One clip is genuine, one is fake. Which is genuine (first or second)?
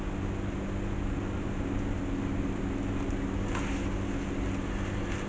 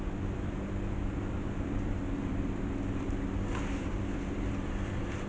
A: first